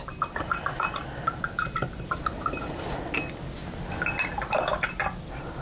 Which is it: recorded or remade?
recorded